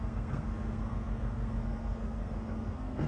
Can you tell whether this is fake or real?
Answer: fake